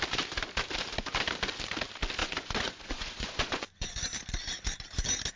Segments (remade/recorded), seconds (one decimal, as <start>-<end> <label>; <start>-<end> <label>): 0.0-2.2 recorded; 2.2-4.0 remade; 4.0-5.4 recorded